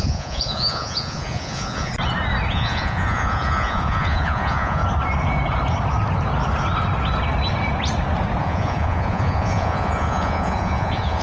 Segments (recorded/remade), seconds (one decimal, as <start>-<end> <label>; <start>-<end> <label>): 0.0-1.9 remade; 1.9-2.5 recorded; 2.5-4.8 remade; 4.8-8.4 recorded; 8.4-11.2 remade